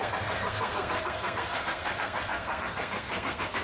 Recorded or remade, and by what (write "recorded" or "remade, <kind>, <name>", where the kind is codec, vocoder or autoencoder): remade, codec, SNAC